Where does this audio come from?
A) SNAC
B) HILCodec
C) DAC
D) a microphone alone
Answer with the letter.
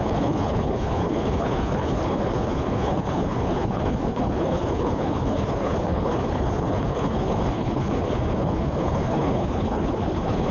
B